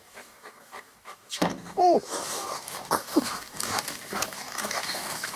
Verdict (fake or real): fake